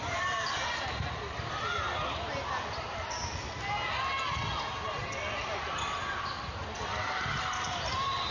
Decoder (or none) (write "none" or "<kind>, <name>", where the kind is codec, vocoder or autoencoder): none